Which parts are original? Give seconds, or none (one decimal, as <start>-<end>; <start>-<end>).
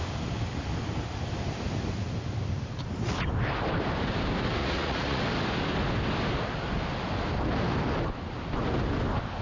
0.0-4.6; 5.2-9.4